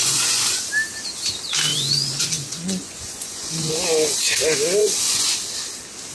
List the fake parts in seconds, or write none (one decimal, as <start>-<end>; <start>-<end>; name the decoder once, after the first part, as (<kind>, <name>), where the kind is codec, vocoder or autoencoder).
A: 0.0-0.7 (vocoder, Vocos); 1.7-3.7; 4.8-5.3